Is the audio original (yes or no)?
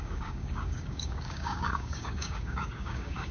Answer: no